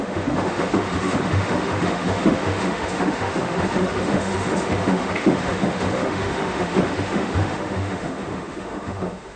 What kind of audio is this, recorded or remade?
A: remade